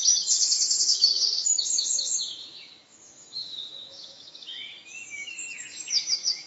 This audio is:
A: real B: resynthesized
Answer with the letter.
B